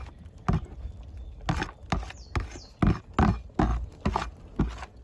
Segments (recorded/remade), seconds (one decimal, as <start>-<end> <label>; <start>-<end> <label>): 0.0-5.0 recorded